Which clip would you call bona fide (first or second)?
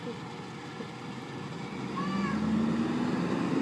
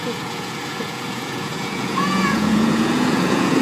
first